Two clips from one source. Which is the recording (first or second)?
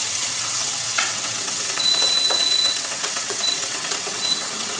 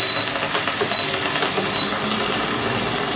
second